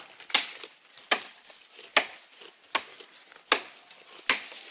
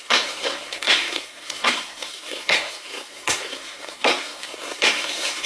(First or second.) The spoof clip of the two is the second